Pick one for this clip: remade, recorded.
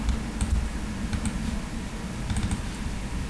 recorded